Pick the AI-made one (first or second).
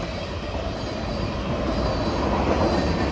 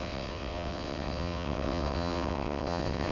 second